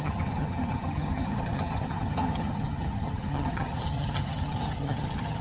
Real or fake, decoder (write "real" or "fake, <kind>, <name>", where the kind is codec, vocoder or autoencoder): fake, vocoder, HiFi-GAN